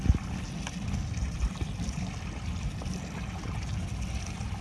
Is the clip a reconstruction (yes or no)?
no